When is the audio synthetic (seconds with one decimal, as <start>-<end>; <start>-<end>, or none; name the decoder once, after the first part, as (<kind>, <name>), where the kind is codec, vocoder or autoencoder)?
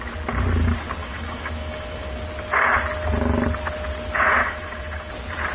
1.0-2.2 (autoencoder, DAC-VAE); 4.4-5.1